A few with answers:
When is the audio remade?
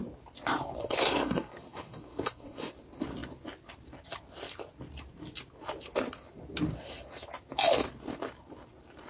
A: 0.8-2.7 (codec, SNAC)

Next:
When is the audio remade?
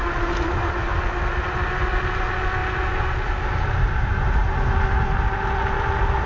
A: none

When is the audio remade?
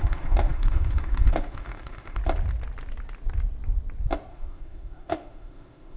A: 0.0-2.2 (autoencoder, DAC-VAE); 4.3-6.0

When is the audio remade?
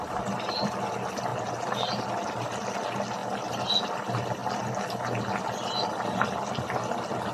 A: none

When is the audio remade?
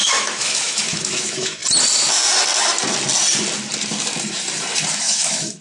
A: 0.0-1.6 (autoencoder, DAC-VAE); 5.0-5.6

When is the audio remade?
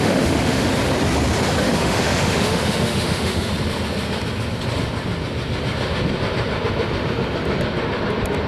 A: 0.0-0.7 (autoencoder, DAC-VAE); 1.6-3.5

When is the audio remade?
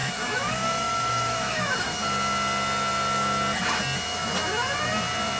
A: 0.0-1.9 (autoencoder, DAC-VAE)